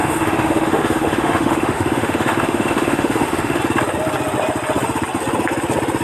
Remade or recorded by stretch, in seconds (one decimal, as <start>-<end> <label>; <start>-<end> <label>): 0.0-3.6 remade; 3.6-6.0 recorded